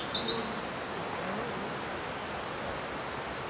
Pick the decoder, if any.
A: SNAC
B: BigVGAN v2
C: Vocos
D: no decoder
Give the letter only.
D